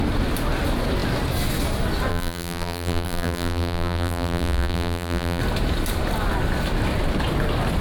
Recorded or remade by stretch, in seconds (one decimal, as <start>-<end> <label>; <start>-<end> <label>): 0.0-2.1 recorded; 2.1-5.4 remade; 5.4-7.8 recorded